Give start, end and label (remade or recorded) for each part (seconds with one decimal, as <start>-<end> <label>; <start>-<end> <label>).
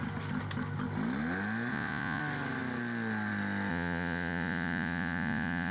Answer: 0.0-1.7 recorded; 1.7-2.2 remade; 2.2-3.7 recorded; 3.7-5.7 remade